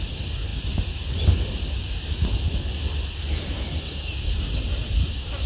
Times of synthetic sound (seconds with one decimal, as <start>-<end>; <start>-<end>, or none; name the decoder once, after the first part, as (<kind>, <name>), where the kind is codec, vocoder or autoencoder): none